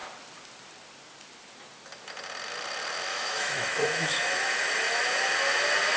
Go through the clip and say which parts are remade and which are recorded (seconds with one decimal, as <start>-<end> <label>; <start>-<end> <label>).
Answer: 0.0-3.1 recorded; 3.1-5.0 remade; 5.0-6.0 recorded